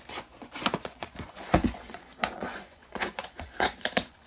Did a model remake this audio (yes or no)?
yes